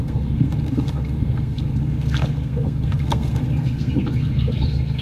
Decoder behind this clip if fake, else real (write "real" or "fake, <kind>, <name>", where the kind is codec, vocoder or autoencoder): fake, codec, SNAC